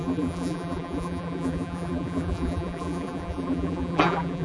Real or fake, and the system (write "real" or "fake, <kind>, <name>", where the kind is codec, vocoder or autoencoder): fake, vocoder, BigVGAN v2